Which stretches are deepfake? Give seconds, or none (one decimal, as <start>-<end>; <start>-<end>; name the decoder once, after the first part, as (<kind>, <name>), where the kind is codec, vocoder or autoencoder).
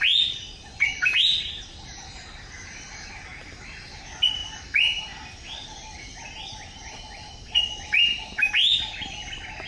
0.6-1.6 (vocoder, BigVGAN v2)